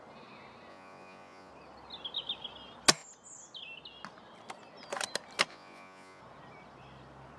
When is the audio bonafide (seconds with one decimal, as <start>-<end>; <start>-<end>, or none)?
0.0-0.7; 1.5-5.5; 6.2-7.4